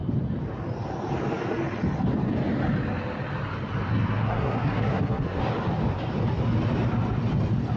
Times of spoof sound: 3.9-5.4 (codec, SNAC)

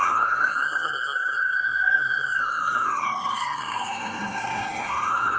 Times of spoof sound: 0.0-5.4 (codec, SNAC)

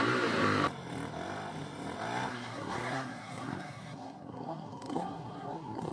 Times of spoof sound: 2.3-5.9 (codec, SNAC)

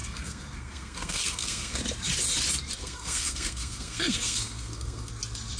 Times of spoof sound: 0.0-1.8 (codec, SNAC); 2.8-5.1

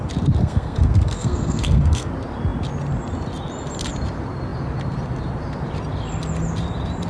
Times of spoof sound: 0.4-2.1 (codec, SNAC)

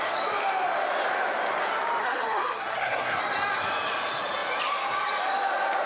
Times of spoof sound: 2.0-3.2 (codec, SNAC)